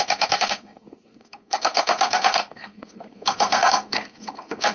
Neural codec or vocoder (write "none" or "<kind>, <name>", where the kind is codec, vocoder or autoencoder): codec, SNAC